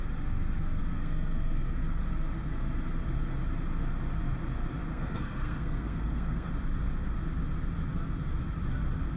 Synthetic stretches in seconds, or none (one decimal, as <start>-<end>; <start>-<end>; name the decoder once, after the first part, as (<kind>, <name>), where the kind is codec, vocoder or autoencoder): 0.8-1.7 (codec, SNAC); 4.9-6.5